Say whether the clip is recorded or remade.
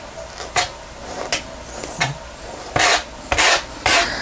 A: recorded